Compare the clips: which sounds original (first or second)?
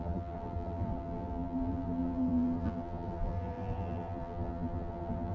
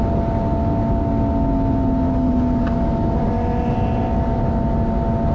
second